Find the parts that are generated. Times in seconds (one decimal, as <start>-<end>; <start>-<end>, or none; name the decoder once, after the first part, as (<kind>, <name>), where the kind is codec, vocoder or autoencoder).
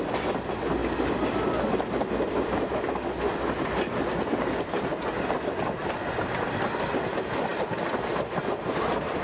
none